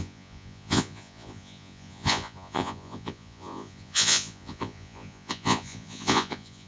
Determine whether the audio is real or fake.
fake